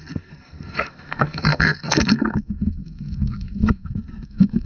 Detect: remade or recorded remade